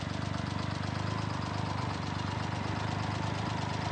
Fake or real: real